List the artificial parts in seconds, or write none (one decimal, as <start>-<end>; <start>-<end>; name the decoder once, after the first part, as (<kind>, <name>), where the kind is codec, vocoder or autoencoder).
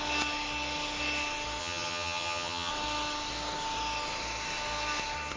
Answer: 1.6-2.7 (vocoder, HiFi-GAN)